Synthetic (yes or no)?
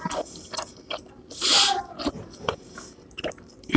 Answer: no